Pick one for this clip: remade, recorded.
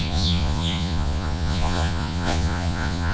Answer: remade